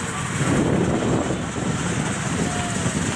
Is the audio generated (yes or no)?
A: no